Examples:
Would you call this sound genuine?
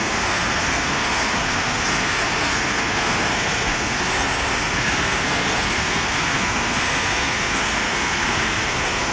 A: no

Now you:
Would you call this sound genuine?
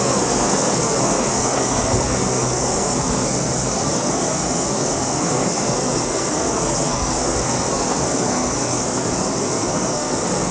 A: no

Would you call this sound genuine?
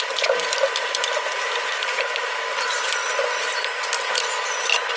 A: yes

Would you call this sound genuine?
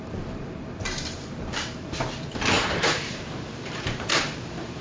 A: no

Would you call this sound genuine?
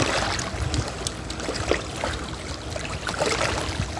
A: yes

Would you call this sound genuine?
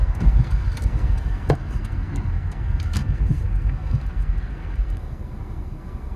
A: no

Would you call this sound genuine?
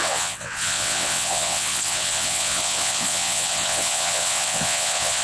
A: no